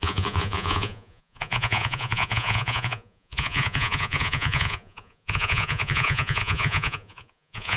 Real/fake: fake